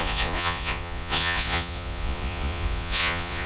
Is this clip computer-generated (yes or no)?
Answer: yes